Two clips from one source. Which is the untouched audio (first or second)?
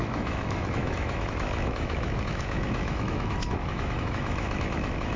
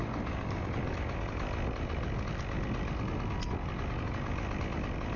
second